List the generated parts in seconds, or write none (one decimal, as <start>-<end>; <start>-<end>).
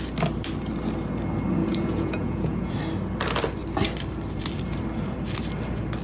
1.6-2.7